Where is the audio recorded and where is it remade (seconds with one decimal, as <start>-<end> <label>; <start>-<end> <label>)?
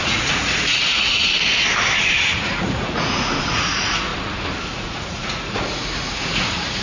0.0-1.2 remade; 1.2-2.2 recorded; 2.2-4.1 remade; 4.1-4.7 recorded; 4.7-6.8 remade